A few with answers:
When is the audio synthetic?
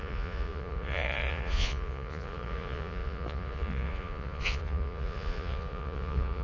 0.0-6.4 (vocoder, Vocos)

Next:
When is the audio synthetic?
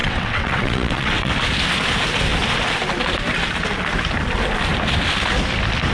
0.0-1.3 (vocoder, WaveNeXt)